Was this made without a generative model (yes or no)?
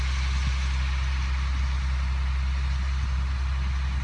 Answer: yes